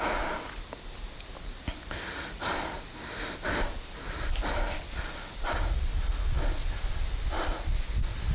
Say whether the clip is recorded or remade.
recorded